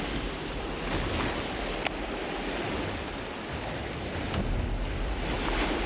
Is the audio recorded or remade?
recorded